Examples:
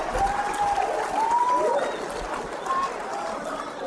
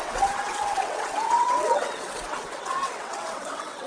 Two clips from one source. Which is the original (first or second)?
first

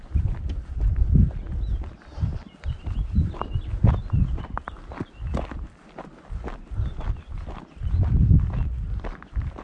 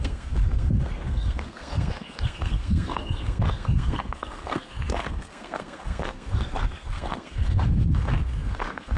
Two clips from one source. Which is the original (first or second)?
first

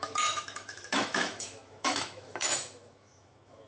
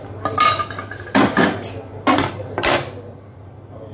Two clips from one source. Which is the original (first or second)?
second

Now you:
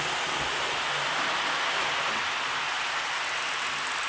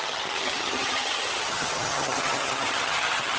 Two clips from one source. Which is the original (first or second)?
first